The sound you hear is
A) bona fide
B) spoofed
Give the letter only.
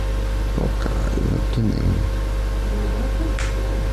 A